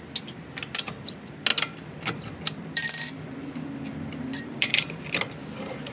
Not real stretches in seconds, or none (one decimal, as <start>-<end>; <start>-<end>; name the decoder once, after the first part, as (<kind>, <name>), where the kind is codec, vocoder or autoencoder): 1.5-5.0 (vocoder, BigVGAN v2)